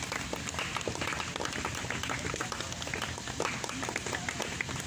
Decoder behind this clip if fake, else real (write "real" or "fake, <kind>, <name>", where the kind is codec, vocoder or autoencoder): real